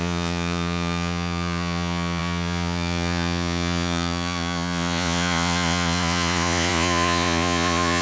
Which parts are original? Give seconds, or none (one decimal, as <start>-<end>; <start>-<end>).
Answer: none